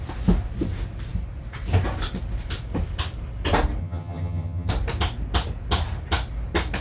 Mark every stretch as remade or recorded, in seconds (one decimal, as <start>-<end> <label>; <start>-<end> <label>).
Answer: 0.0-3.8 recorded; 3.8-4.7 remade; 4.7-6.8 recorded